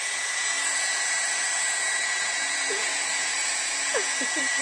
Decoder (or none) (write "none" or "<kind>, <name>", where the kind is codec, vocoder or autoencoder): vocoder, Vocos